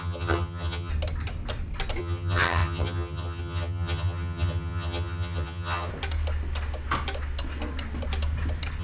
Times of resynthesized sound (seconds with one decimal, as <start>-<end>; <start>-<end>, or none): 0.0-0.9; 2.0-5.9